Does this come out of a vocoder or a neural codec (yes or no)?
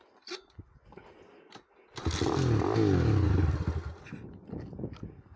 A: no